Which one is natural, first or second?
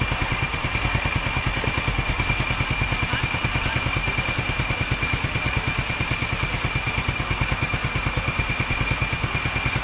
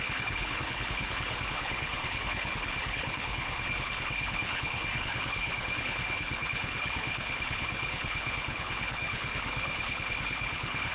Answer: first